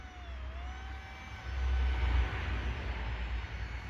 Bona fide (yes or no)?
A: yes